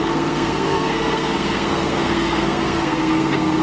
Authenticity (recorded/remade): remade